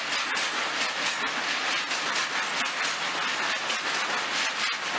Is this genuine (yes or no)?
yes